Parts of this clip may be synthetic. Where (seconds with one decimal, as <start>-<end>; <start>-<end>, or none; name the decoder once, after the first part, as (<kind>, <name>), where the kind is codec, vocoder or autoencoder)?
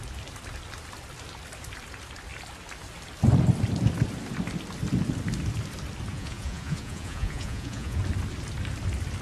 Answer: 6.1-8.0 (vocoder, Vocos)